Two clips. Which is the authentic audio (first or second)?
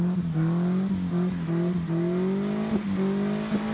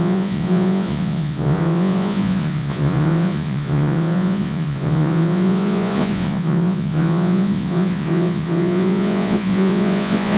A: first